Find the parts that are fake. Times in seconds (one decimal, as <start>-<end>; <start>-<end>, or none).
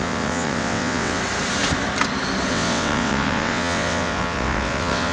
0.0-1.2; 2.5-5.1